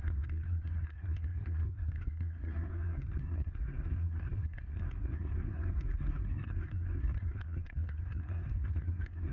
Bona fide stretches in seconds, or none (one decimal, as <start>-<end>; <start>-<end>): none